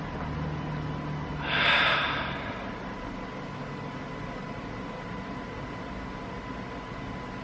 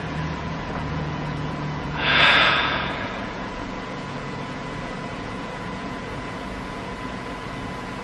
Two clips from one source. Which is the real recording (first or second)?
first